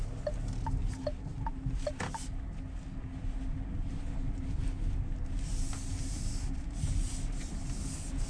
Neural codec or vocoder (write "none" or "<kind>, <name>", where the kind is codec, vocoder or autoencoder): none